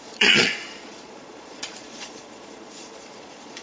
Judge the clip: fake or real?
fake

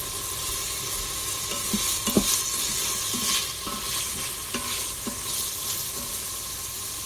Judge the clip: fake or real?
real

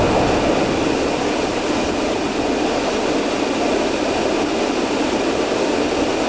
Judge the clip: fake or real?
real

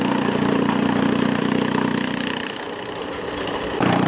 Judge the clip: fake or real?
fake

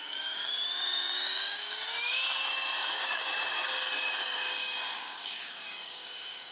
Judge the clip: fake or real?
fake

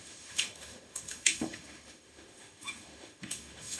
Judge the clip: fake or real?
fake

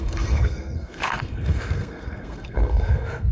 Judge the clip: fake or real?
fake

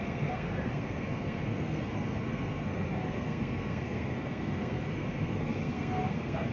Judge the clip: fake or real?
fake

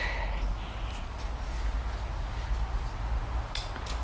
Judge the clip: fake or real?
real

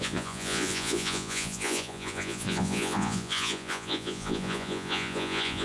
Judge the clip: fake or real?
fake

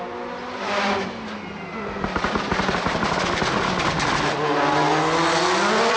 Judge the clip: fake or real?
real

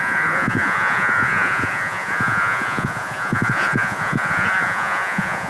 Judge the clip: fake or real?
fake